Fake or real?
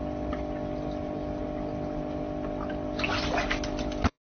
real